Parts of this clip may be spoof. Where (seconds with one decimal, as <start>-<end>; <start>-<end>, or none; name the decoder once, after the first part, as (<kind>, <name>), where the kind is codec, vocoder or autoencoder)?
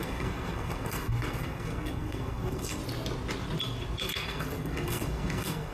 0.0-2.8 (codec, SNAC); 4.0-5.7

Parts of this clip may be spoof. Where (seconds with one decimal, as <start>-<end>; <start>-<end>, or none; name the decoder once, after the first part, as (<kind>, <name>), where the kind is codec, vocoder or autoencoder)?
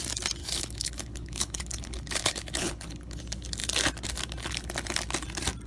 0.4-3.2 (codec, HILCodec)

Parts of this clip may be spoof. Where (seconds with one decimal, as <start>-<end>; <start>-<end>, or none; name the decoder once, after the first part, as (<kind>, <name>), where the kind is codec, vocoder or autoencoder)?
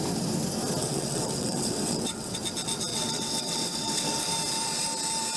0.8-2.4 (vocoder, WaveNeXt); 2.9-4.2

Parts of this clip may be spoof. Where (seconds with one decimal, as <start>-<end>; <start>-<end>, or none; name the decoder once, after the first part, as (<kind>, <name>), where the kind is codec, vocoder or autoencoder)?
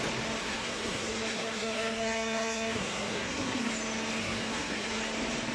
0.4-3.7 (codec, SNAC); 4.2-5.0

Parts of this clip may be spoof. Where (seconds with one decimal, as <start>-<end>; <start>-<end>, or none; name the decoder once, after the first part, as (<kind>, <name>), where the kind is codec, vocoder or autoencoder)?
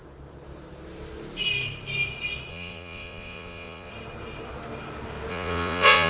2.5-3.9 (vocoder, Vocos); 5.3-6.1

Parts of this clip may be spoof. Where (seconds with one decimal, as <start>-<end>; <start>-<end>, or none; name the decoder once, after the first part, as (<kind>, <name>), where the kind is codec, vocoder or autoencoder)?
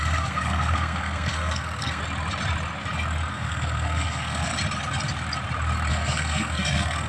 0.0-2.0 (codec, SNAC); 3.3-4.5; 5.9-7.1